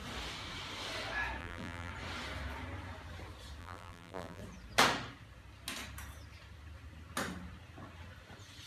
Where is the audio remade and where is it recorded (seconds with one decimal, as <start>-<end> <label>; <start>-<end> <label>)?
0.0-1.4 recorded; 1.4-1.9 remade; 1.9-3.6 recorded; 3.6-4.4 remade; 4.4-8.7 recorded